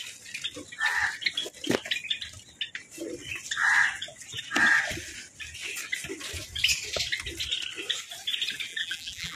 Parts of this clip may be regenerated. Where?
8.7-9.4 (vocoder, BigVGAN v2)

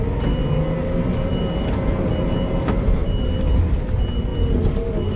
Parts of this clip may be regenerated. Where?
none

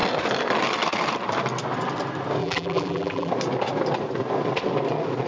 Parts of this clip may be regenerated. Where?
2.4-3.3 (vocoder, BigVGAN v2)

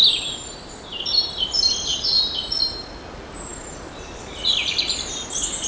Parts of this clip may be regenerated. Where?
1.1-1.9 (vocoder, BigVGAN v2); 3.1-5.7

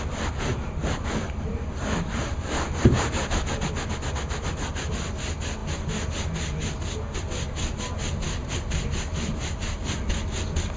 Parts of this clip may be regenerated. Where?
0.8-2.8 (vocoder, BigVGAN v2); 8.4-10.1

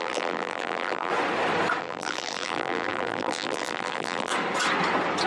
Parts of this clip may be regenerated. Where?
0.0-1.1 (vocoder, BigVGAN v2); 1.8-4.3